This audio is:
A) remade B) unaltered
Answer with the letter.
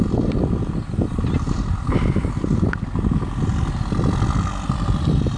B